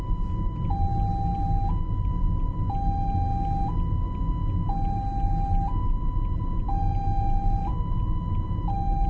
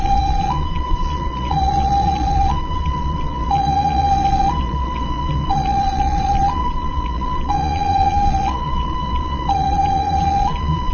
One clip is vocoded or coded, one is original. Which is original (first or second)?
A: first